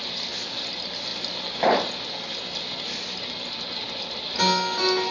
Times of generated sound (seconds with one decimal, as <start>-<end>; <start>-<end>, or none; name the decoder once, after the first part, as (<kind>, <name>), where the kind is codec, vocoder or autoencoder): none